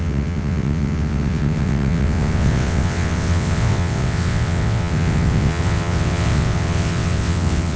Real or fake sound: fake